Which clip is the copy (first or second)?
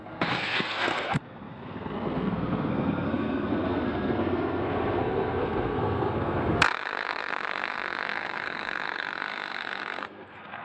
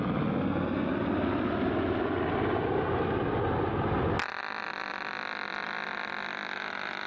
first